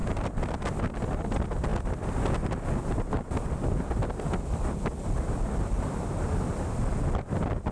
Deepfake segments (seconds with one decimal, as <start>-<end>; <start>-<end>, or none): 0.0-0.8